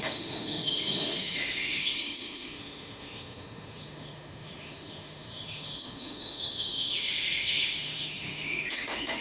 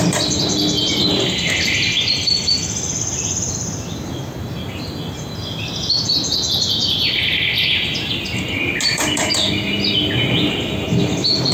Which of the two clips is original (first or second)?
second